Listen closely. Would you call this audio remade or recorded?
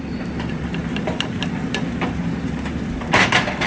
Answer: recorded